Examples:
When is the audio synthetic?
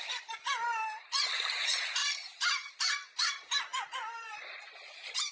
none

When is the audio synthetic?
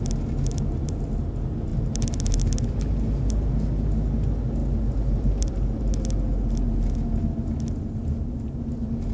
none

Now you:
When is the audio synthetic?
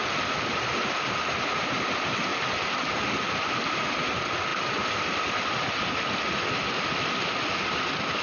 none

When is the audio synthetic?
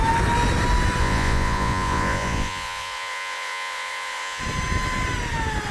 1.0-4.4 (vocoder, Vocos)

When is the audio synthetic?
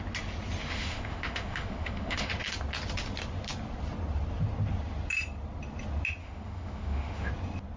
0.7-2.3 (autoencoder, DAC-VAE); 6.2-7.3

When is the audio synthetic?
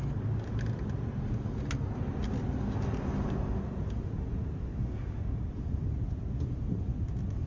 4.7-5.5 (codec, DAC)